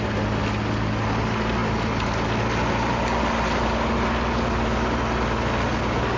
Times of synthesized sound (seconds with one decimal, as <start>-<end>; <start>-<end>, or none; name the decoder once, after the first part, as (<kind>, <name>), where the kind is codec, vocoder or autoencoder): none